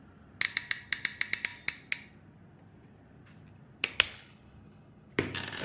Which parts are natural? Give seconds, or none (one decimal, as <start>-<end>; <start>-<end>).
0.0-4.1; 5.1-5.6